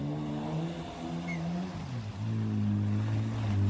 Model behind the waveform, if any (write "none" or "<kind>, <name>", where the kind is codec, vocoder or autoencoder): none